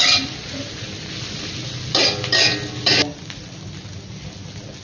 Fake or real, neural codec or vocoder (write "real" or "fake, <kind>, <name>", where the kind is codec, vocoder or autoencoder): real